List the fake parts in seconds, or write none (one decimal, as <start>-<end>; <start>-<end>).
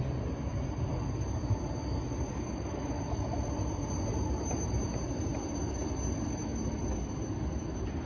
2.3-3.0